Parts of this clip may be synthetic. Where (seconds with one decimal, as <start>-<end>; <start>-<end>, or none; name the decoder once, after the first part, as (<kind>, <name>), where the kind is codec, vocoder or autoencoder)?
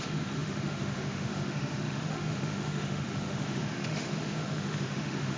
0.0-5.4 (autoencoder, DAC-VAE)